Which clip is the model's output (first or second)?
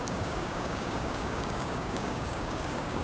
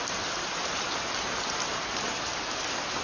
first